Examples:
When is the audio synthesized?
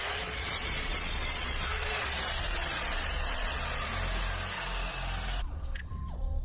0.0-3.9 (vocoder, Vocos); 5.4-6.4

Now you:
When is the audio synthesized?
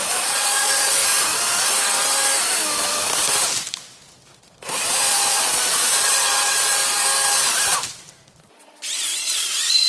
0.0-1.0 (vocoder, Vocos); 5.2-6.8; 8.4-9.9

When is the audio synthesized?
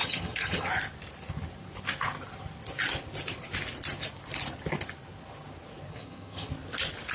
0.0-0.7 (vocoder, HiFi-GAN); 5.9-6.5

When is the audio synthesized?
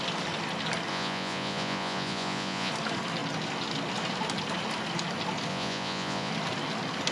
0.9-2.7 (vocoder, Vocos); 5.5-6.3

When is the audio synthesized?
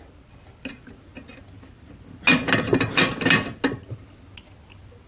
none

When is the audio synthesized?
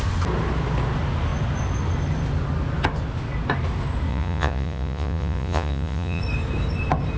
4.1-6.2 (vocoder, Vocos)